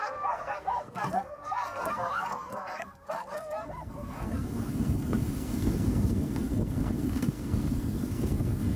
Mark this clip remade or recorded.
remade